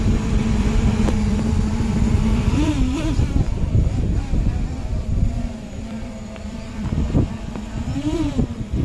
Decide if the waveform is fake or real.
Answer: fake